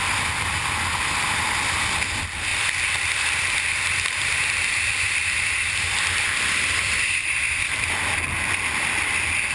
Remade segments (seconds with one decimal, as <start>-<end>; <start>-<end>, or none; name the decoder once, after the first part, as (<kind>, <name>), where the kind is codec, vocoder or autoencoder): 2.5-7.7 (vocoder, BigVGAN v2)